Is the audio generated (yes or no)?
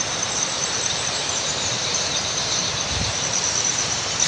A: yes